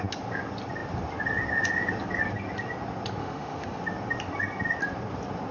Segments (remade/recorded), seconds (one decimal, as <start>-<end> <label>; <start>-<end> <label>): 0.0-3.2 recorded; 3.2-3.8 remade; 3.8-5.5 recorded